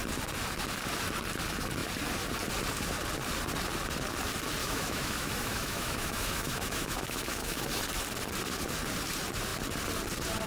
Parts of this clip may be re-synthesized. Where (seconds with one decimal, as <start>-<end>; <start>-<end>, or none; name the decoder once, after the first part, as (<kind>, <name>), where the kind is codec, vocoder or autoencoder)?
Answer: 4.6-7.8 (autoencoder, DAC-VAE)